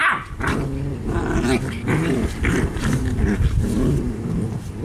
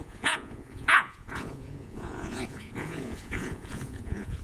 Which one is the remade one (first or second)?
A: second